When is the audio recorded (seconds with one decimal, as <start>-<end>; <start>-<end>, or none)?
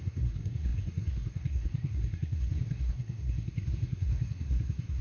none